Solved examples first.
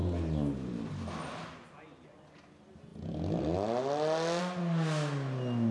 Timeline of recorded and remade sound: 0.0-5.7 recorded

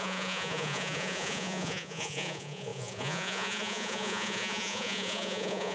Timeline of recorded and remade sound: 0.0-5.7 remade

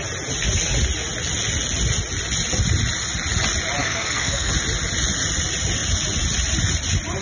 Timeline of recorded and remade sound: 0.0-3.8 recorded; 3.8-4.5 remade; 4.5-7.2 recorded

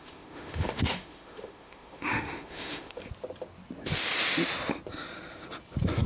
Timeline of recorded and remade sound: 0.0-3.0 remade; 3.0-6.1 recorded

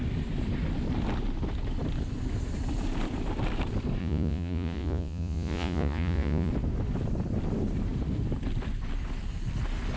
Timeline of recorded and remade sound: 0.0-4.0 recorded; 4.0-6.5 remade; 6.5-10.0 recorded

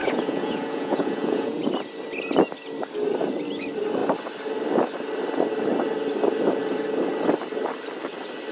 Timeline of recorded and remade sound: 0.0-1.6 remade; 1.6-8.5 recorded

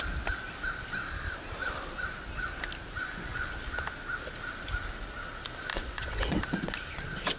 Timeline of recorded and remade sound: 0.0-3.0 recorded; 3.0-3.5 remade; 3.5-5.7 recorded; 5.7-6.4 remade; 6.4-7.4 recorded

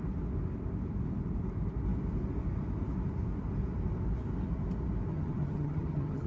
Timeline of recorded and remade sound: 0.0-5.1 recorded; 5.1-6.3 remade